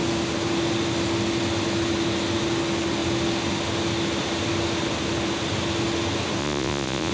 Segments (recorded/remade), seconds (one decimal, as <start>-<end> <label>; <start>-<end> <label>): 0.0-6.4 recorded; 6.4-7.1 remade